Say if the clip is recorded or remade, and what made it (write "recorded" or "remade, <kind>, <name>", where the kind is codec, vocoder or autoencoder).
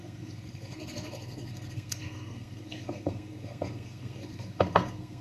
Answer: remade, codec, SNAC